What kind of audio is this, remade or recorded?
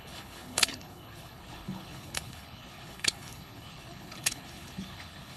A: remade